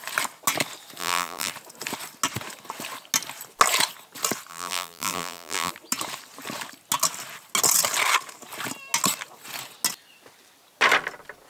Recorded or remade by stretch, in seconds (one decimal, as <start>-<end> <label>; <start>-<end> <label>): 0.0-1.0 recorded; 1.0-1.5 remade; 1.5-4.5 recorded; 4.5-5.7 remade; 5.7-11.5 recorded

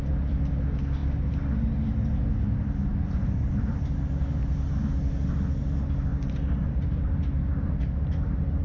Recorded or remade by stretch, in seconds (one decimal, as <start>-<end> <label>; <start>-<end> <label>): 0.0-2.9 recorded; 2.9-3.7 remade; 3.7-6.1 recorded; 6.1-8.6 remade